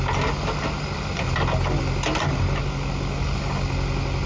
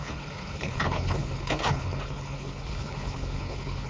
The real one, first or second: first